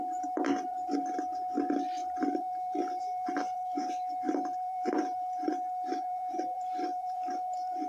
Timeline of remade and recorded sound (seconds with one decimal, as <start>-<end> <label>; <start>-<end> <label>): 0.0-7.9 remade